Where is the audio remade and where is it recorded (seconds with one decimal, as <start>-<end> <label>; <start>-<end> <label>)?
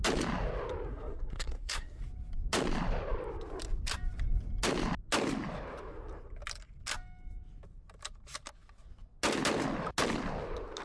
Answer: 0.0-0.9 recorded; 0.9-2.0 remade; 2.0-10.8 recorded